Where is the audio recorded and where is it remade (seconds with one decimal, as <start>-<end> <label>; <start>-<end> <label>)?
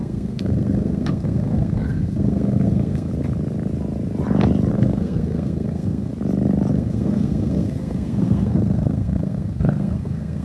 0.0-3.1 remade; 3.1-4.7 recorded; 4.7-6.1 remade; 6.1-6.7 recorded; 6.7-10.4 remade